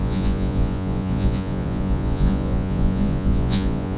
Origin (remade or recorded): remade